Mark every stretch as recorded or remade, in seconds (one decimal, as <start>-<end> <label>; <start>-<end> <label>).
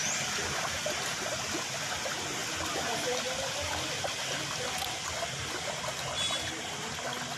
0.0-7.4 recorded